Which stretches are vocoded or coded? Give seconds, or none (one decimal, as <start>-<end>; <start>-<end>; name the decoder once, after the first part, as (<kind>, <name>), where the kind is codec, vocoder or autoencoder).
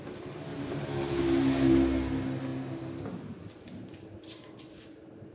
0.5-1.2 (vocoder, BigVGAN v2); 2.5-4.7